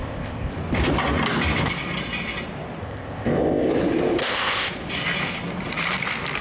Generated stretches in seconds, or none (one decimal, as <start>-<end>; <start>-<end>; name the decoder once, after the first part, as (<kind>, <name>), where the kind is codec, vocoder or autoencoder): 0.0-0.5 (codec, ZipCodec); 2.8-3.7; 4.2-4.7